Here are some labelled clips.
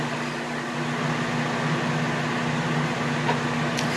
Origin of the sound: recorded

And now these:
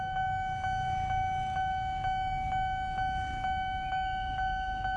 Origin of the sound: recorded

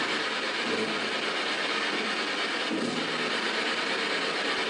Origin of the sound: recorded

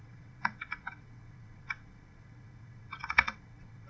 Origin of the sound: remade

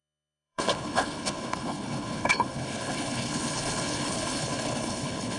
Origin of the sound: remade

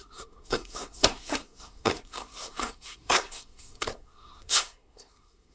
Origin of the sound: remade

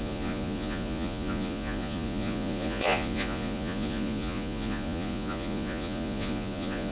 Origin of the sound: remade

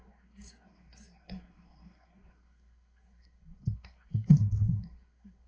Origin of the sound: remade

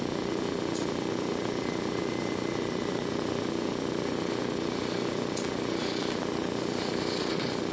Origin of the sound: recorded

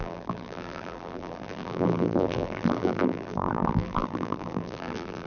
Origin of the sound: remade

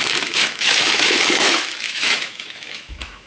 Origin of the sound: remade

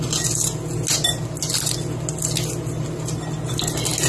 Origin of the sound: recorded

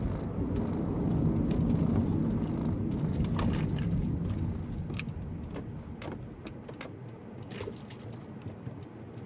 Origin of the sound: recorded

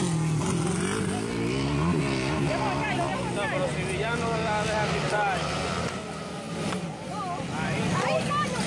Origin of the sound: recorded